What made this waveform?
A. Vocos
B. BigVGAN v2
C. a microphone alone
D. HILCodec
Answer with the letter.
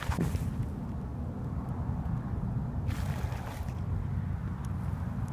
C